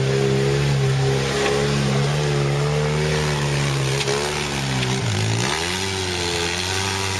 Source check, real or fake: real